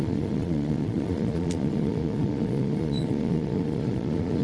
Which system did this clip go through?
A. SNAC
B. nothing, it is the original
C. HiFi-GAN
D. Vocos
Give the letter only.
D